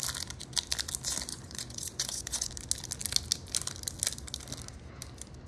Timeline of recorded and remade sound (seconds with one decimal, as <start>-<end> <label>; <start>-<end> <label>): 0.0-1.3 recorded; 1.3-2.5 remade; 2.5-5.5 recorded